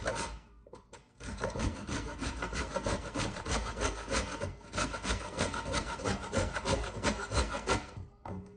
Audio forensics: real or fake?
fake